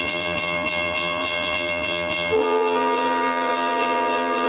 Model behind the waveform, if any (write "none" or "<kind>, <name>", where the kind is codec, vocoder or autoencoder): vocoder, BigVGAN v2